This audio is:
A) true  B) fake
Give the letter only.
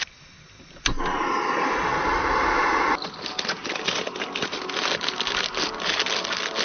A